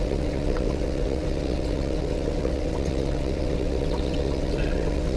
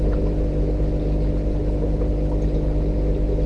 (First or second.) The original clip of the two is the second